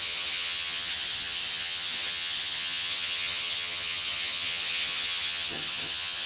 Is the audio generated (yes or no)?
yes